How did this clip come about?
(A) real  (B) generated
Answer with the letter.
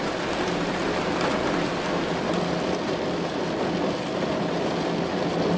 A